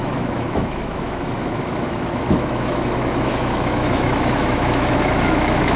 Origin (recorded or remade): remade